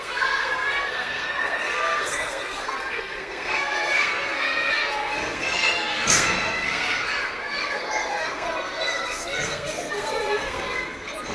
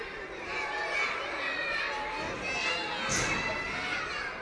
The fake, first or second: first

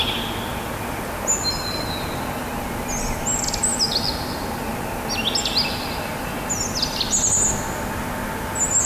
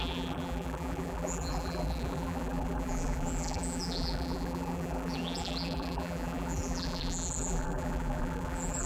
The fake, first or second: second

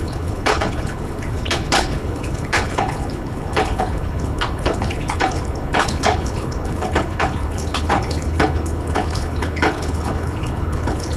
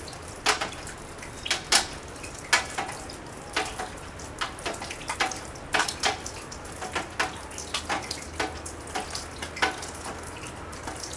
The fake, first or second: first